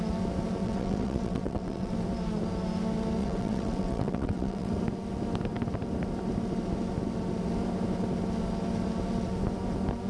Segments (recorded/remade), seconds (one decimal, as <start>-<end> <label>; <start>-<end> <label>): 0.0-0.6 recorded; 0.6-1.9 remade; 1.9-3.2 recorded; 3.2-4.7 remade; 4.7-10.1 recorded